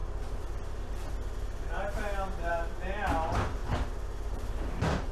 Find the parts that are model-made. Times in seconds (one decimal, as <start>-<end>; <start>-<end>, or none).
3.6-5.1